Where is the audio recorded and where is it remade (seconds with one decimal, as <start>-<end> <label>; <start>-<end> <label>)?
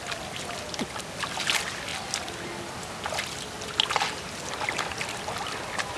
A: 0.0-6.0 recorded